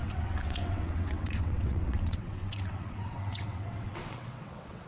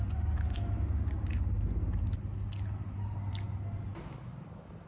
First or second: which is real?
second